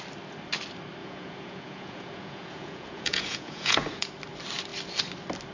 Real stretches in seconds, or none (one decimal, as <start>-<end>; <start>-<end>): 0.0-1.0; 4.1-5.5